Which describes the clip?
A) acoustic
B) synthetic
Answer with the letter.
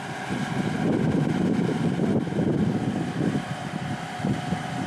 A